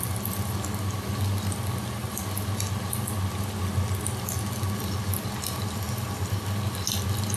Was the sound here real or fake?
real